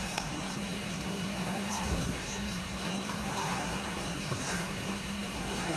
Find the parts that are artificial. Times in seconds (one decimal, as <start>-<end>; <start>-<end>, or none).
0.0-5.8